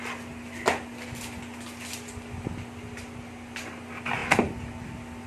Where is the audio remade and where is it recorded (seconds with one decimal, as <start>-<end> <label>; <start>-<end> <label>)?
0.0-5.3 recorded